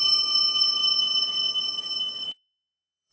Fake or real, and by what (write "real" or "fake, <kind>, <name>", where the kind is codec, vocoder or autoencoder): fake, vocoder, Vocos